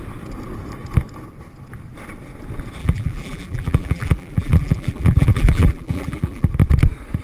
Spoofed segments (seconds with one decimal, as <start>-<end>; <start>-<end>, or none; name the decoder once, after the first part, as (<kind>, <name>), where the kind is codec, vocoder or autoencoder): 2.8-6.5 (vocoder, BigVGAN v2)